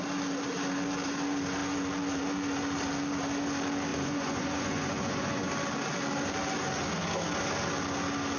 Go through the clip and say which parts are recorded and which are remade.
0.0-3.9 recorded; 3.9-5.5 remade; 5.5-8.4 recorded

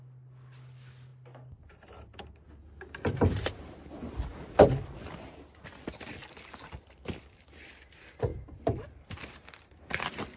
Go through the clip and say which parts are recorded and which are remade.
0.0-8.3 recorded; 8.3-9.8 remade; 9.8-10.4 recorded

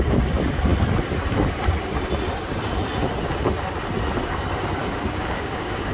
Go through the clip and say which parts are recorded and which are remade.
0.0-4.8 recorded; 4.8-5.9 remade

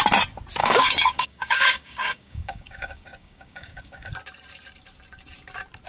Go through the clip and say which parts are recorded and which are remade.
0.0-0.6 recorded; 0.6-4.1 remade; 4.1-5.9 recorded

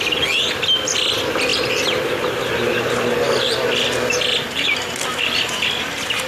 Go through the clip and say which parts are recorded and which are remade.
0.0-6.3 recorded

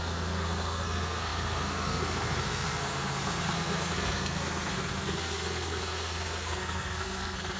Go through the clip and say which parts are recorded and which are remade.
0.0-7.6 remade